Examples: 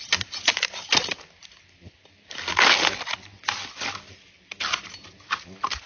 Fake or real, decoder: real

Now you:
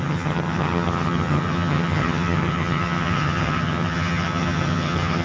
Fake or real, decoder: fake, vocoder, HiFi-GAN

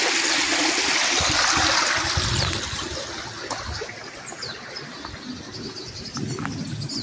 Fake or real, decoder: real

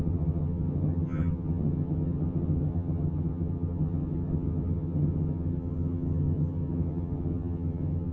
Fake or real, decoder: fake, vocoder, HiFi-GAN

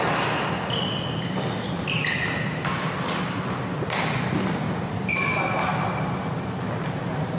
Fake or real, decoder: real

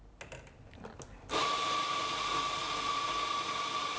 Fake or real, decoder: real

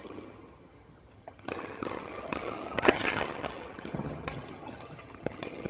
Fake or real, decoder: fake, vocoder, HiFi-GAN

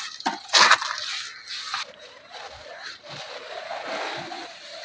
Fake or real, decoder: real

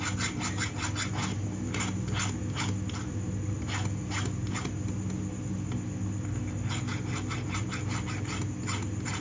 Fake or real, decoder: real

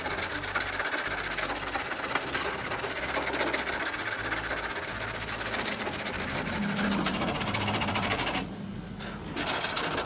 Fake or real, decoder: real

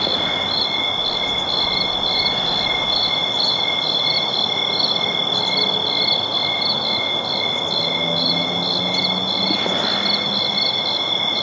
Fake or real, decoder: real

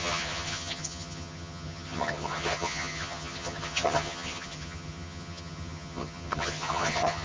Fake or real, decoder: fake, vocoder, HiFi-GAN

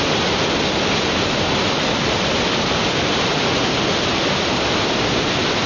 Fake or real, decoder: real